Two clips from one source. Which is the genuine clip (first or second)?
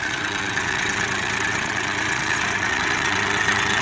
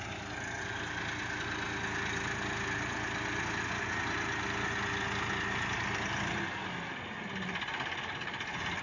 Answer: second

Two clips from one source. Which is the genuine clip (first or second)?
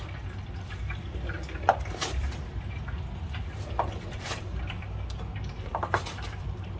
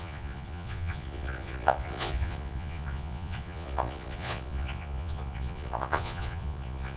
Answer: first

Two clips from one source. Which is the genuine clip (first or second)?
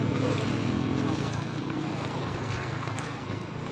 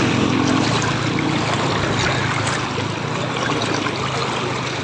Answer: second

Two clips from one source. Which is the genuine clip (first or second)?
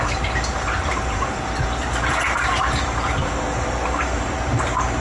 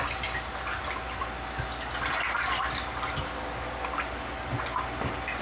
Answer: second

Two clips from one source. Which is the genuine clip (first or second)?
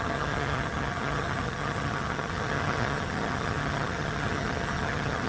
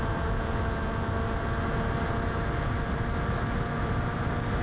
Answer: second